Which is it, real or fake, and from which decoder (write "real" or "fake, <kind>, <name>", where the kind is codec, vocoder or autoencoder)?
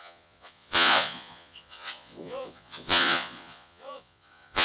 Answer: fake, vocoder, Vocos